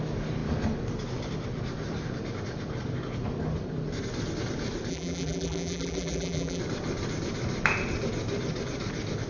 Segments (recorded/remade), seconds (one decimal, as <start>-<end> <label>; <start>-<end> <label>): 0.0-4.9 recorded; 4.9-6.6 remade; 6.6-9.3 recorded